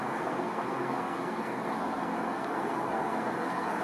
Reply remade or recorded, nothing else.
remade